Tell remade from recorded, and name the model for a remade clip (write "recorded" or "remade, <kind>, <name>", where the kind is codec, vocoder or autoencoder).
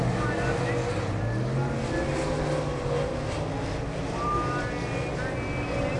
recorded